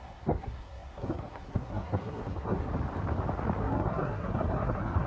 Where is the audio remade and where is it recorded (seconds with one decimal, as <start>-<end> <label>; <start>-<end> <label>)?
0.0-2.7 remade; 2.7-3.6 recorded; 3.6-5.1 remade